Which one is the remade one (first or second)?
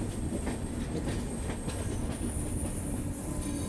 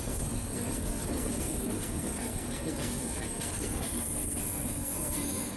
second